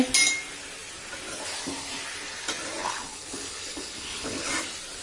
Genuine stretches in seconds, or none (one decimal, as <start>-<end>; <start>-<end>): 0.0-2.8; 4.5-5.0